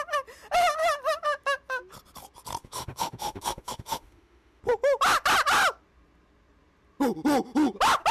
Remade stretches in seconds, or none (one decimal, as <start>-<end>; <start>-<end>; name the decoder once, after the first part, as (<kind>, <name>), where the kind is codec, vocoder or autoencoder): 2.6-4.6 (autoencoder, DAC-VAE)